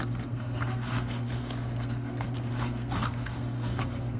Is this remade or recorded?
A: remade